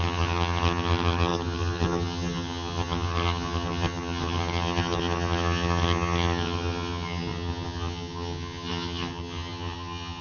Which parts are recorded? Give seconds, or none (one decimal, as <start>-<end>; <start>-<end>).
none